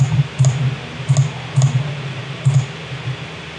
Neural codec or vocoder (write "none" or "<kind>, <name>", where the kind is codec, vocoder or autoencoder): none